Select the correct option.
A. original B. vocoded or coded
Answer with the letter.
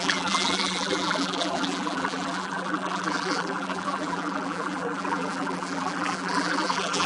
B